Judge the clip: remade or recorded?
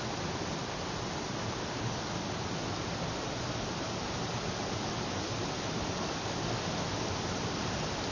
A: recorded